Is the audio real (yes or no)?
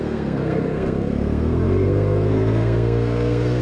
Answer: no